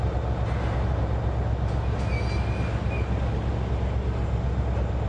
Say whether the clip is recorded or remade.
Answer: recorded